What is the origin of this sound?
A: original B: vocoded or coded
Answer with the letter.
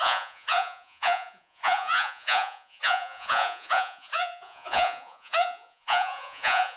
B